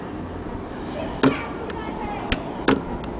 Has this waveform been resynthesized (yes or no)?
no